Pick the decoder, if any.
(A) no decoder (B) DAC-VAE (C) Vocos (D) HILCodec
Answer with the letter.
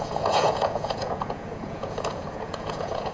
C